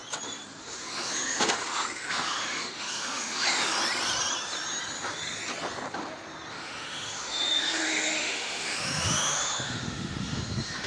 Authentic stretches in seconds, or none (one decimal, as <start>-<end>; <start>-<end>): 0.0-0.6; 3.8-6.5